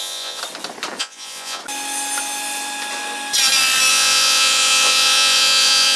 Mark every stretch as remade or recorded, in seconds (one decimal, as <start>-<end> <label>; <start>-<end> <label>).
0.0-0.4 remade; 0.4-1.0 recorded; 1.0-1.6 remade; 1.6-3.9 recorded; 3.9-6.0 remade